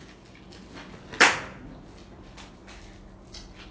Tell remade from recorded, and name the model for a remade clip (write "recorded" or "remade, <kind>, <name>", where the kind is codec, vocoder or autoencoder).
recorded